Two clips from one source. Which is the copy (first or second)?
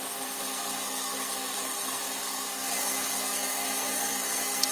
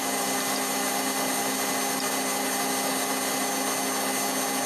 first